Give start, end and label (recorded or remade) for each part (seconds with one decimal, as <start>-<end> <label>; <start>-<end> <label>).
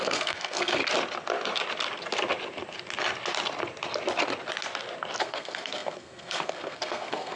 0.0-0.8 remade; 0.8-5.2 recorded; 5.2-7.4 remade